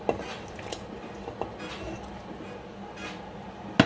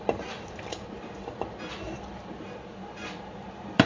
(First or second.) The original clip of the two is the first